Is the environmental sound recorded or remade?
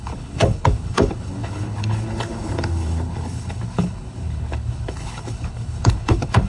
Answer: remade